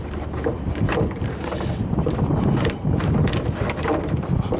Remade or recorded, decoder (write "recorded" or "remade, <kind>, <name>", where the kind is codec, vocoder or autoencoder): recorded